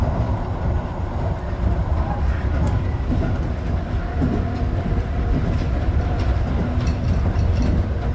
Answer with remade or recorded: recorded